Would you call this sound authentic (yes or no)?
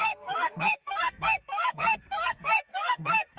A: no